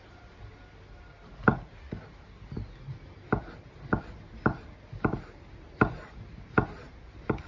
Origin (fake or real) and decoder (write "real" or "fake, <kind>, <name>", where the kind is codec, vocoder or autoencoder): real